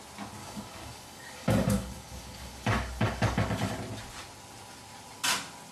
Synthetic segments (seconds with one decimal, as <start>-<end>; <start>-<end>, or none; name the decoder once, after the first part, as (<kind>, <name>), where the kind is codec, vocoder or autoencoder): 0.4-3.8 (codec, DAC)